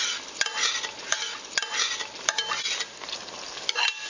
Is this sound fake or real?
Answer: real